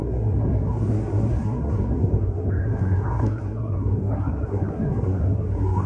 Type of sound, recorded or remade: remade